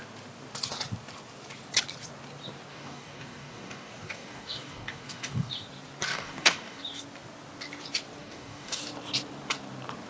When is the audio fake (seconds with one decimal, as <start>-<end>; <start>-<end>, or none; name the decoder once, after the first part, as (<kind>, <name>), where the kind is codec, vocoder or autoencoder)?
2.7-5.5 (codec, DAC); 6.1-6.8; 8.2-8.8